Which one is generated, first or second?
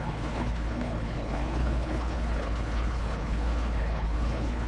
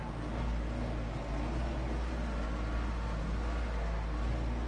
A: first